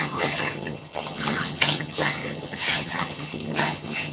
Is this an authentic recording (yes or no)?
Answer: no